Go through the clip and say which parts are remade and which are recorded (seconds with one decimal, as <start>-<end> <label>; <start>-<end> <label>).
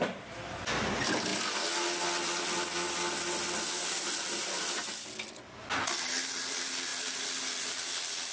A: 0.0-8.3 recorded